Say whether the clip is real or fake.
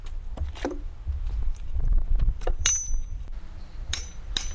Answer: fake